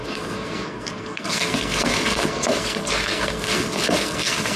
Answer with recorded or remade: remade